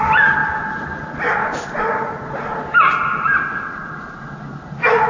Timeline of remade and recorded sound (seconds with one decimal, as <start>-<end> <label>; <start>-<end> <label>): 0.0-5.1 recorded